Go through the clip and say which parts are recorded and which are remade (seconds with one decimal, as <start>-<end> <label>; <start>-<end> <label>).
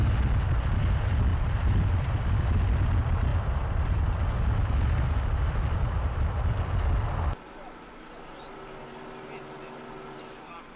0.0-1.3 recorded; 1.3-2.2 remade; 2.2-10.8 recorded